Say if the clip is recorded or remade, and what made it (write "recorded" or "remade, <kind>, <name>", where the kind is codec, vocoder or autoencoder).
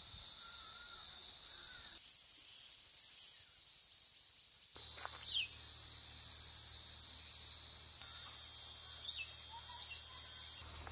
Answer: recorded